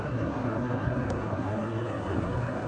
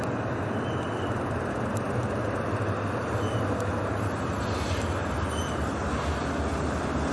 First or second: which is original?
second